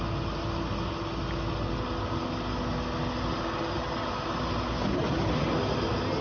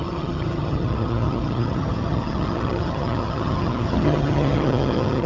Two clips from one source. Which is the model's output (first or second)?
second